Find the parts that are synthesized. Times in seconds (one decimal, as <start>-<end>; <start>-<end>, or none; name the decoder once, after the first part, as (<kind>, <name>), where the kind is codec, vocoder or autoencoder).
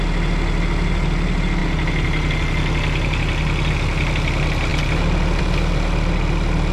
none